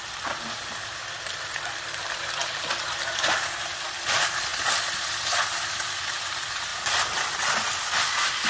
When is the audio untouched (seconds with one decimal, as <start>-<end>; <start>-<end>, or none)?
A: 0.0-8.5

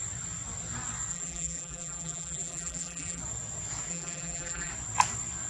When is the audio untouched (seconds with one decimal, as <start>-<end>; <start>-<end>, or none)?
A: 0.0-1.1; 3.2-3.9; 4.7-5.5

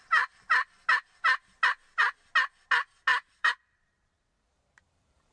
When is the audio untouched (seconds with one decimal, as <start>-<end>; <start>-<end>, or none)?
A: 0.0-3.1

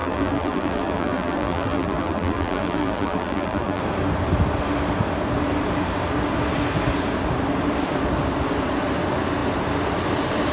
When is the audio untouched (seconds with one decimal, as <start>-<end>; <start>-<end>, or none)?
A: 3.8-10.5

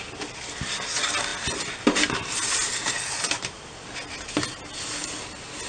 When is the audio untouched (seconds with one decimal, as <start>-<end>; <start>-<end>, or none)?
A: 0.0-5.7

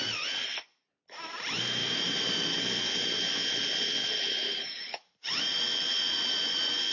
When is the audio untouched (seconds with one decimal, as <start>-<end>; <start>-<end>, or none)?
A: 0.0-1.8; 2.3-4.0; 5.6-6.9

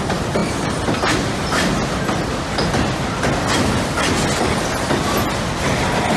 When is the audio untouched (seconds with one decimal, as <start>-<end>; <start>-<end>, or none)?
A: 0.0-6.2